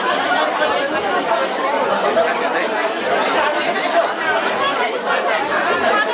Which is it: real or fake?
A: real